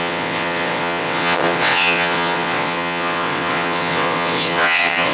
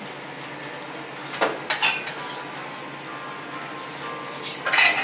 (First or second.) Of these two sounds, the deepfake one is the first